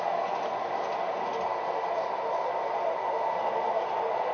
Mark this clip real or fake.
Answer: real